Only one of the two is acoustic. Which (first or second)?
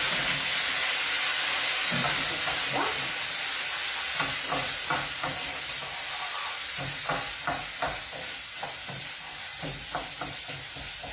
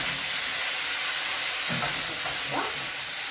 first